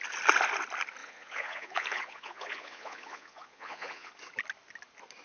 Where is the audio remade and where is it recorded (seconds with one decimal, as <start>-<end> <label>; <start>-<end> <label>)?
0.0-1.0 recorded; 1.0-4.1 remade; 4.1-5.2 recorded